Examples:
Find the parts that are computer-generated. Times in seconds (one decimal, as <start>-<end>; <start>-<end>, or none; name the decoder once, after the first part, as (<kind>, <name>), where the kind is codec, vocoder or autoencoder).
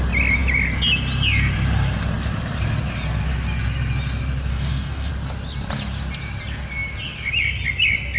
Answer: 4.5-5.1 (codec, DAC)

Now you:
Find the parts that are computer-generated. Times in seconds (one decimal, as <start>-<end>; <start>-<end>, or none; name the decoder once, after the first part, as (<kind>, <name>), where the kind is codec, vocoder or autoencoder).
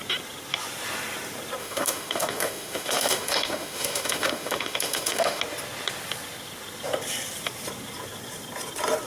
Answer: 1.6-5.4 (autoencoder, DAC-VAE)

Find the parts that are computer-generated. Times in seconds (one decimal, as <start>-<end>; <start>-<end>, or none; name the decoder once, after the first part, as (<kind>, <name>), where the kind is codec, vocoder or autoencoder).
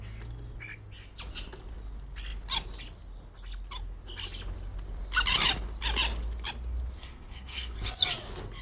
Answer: 7.0-8.0 (codec, SNAC)